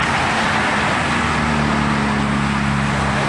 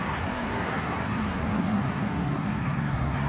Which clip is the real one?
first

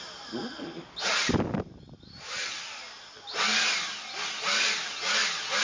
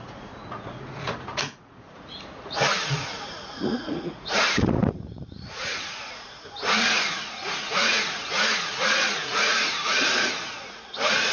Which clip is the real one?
first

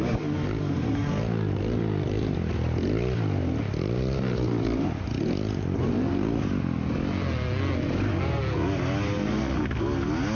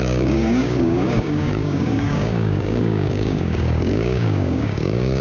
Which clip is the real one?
first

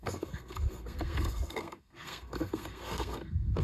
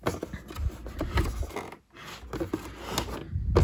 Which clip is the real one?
second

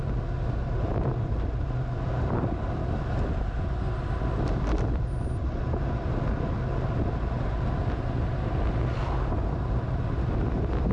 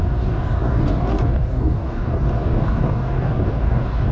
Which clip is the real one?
first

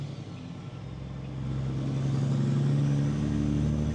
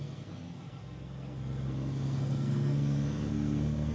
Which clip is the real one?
first